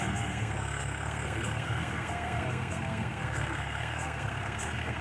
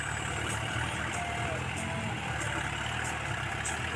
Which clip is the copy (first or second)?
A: first